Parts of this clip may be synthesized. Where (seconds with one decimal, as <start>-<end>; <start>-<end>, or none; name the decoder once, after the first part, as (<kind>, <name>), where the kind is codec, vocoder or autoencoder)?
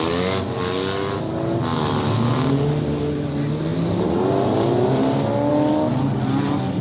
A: none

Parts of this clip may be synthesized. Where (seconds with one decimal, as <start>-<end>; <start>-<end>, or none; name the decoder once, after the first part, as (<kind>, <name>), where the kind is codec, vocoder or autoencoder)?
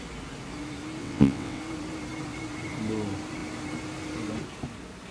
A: 1.0-1.6 (vocoder, WaveNeXt)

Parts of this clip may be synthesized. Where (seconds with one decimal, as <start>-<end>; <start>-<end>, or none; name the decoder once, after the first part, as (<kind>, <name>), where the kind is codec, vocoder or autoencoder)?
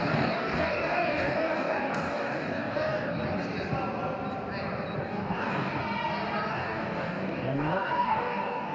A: 0.0-3.2 (codec, DAC); 5.0-5.8; 6.5-8.7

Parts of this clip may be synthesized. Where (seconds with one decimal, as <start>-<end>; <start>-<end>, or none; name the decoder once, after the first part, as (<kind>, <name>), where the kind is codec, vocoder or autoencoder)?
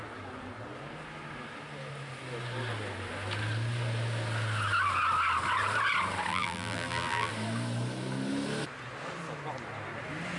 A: 6.3-7.3 (vocoder, BigVGAN v2)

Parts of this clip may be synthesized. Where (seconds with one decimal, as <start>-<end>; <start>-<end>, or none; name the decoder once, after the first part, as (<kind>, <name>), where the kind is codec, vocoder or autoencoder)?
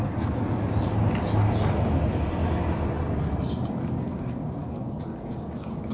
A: 0.0-0.4 (codec, DAC); 3.8-4.6; 5.2-5.9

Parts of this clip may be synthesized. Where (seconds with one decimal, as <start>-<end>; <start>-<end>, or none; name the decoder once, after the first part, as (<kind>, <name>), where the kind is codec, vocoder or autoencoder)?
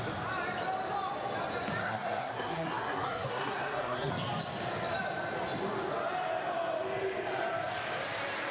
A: 1.8-4.1 (codec, SNAC)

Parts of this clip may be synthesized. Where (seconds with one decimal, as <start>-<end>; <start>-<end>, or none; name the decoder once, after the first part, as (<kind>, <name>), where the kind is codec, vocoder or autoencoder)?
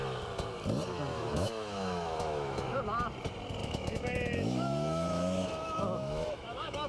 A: 1.1-2.8 (autoencoder, DAC-VAE); 3.6-6.9